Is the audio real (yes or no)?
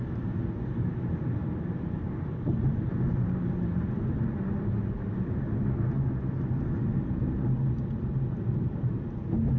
yes